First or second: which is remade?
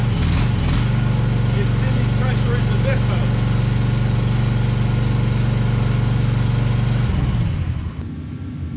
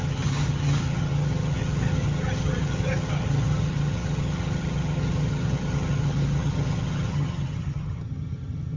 second